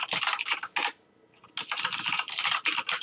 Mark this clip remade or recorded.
recorded